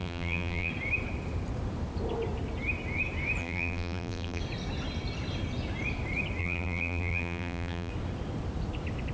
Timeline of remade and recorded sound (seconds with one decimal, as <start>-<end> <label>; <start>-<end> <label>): 0.0-0.7 remade; 0.7-3.4 recorded; 3.4-4.4 remade; 4.4-6.4 recorded; 6.4-7.9 remade; 7.9-9.1 recorded